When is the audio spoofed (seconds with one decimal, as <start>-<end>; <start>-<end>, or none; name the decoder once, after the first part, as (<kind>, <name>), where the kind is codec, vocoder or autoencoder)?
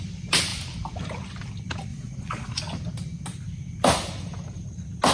1.9-2.6 (vocoder, Vocos)